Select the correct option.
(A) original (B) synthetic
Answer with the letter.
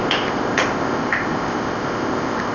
B